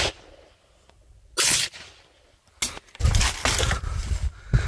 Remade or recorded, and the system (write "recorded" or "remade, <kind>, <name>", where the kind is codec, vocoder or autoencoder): recorded